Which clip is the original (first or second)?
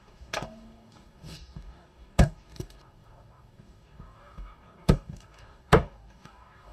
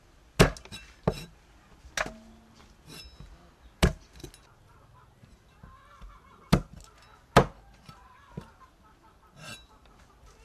second